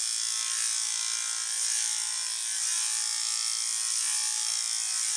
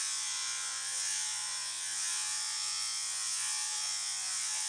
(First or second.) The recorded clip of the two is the first